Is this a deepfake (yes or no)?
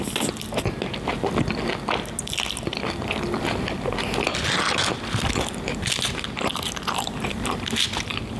no